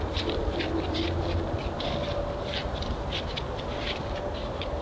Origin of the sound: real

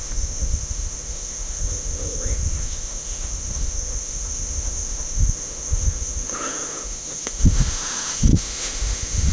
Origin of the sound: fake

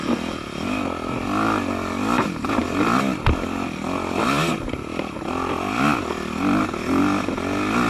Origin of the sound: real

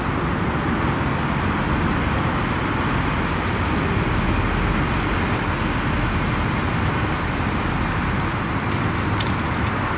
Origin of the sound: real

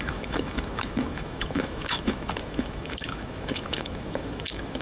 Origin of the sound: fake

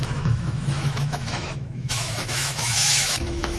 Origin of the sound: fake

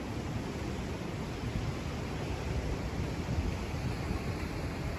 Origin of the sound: real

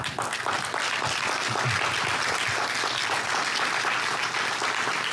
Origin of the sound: real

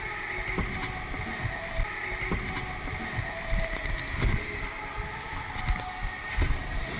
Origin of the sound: real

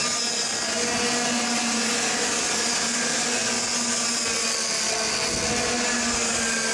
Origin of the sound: real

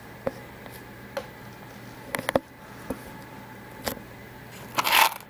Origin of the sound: real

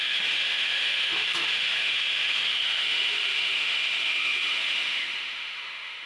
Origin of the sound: fake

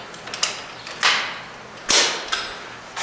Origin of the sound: real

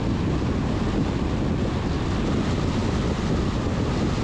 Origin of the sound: real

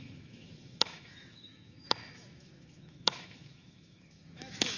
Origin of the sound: fake